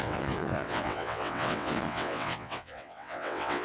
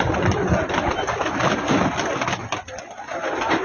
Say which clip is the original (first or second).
second